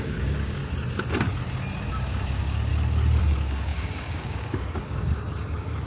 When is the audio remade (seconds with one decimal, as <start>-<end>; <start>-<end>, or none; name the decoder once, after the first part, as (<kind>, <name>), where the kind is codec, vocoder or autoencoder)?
0.0-0.6 (codec, DAC); 1.9-2.7; 3.2-5.9